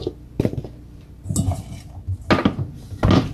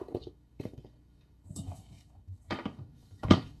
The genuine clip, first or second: first